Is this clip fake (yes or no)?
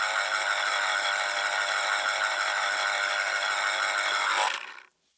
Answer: no